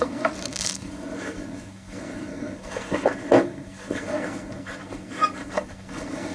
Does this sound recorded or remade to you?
remade